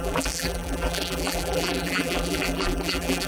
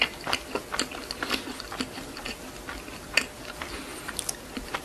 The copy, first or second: first